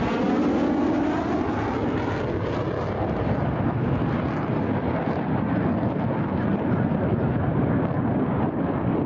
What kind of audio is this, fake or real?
real